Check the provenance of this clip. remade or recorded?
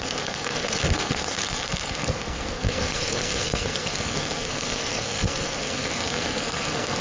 remade